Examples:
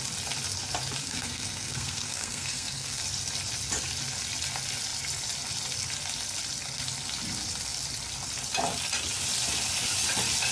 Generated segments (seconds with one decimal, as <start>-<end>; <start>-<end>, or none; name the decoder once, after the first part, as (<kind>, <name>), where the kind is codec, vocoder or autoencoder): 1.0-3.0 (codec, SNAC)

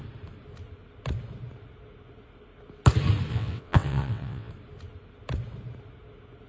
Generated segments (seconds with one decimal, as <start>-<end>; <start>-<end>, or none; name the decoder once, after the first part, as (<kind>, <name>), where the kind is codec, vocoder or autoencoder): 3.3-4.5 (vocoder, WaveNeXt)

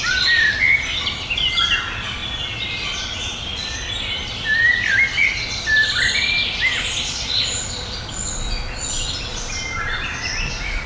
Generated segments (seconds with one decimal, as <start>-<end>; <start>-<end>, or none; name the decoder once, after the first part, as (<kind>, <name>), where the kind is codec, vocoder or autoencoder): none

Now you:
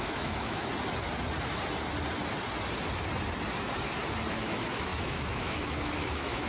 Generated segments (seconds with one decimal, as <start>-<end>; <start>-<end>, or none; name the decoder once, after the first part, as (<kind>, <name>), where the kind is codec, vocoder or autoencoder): 0.0-0.7 (autoencoder, DAC-VAE); 4.3-6.5

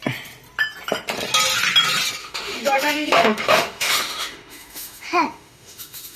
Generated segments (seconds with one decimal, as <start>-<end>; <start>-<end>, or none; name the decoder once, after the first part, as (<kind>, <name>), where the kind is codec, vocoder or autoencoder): 2.2-6.2 (autoencoder, DAC-VAE)

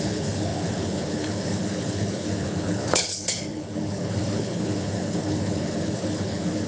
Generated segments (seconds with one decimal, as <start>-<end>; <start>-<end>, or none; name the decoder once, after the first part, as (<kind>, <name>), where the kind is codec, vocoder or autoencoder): 0.0-6.7 (codec, HILCodec)

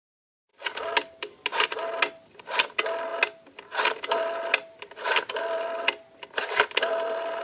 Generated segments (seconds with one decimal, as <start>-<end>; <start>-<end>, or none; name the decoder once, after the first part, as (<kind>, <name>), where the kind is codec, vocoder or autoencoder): none

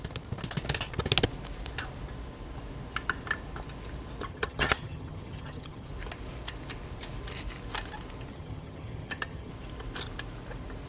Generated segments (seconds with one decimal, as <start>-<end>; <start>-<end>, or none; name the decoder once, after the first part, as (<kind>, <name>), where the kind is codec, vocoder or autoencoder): 4.3-5.9 (vocoder, HiFi-GAN); 8.3-9.5